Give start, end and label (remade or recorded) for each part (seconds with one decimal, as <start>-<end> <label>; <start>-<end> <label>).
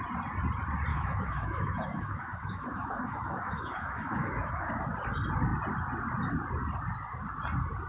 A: 0.0-0.9 recorded; 0.9-4.7 remade; 4.7-7.9 recorded